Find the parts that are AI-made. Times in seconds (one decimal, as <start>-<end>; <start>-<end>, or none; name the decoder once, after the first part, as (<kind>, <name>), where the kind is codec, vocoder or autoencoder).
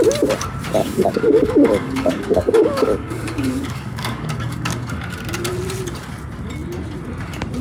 0.8-5.0 (codec, DAC)